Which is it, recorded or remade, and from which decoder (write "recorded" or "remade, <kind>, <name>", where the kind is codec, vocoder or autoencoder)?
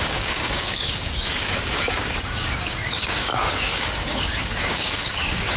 remade, codec, DAC